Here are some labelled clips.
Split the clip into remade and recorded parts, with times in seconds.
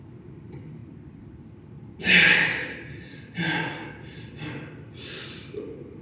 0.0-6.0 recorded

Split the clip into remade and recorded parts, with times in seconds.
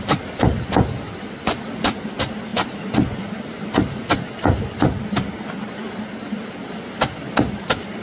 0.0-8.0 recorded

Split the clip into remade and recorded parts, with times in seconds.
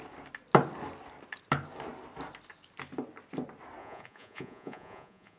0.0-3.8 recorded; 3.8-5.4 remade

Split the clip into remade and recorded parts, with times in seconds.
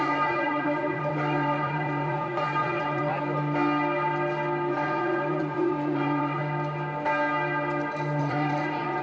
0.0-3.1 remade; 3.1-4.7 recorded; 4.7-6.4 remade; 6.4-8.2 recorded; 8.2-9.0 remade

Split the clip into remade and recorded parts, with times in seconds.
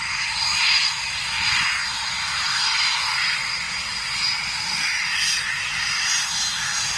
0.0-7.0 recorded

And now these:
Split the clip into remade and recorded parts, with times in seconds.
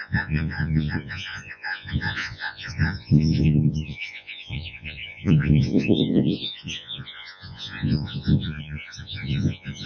0.0-9.9 remade